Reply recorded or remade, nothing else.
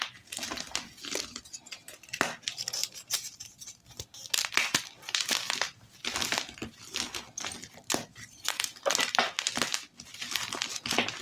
recorded